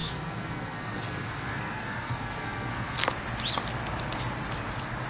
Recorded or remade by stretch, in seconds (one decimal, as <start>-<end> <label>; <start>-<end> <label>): 0.0-3.1 remade; 3.1-5.1 recorded